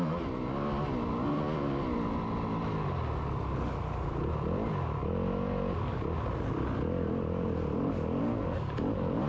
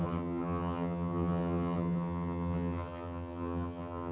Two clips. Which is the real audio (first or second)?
first